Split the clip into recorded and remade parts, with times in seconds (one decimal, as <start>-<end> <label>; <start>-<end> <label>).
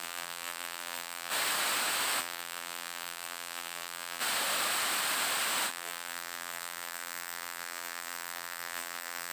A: 0.0-1.3 remade; 1.3-2.2 recorded; 2.2-4.2 remade; 4.2-5.7 recorded; 5.7-9.3 remade